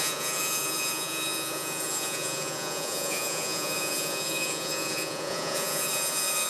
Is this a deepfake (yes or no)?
yes